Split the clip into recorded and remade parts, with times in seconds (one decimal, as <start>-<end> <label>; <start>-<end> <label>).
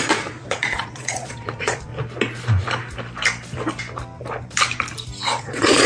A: 0.0-1.9 remade; 1.9-5.4 recorded; 5.4-5.9 remade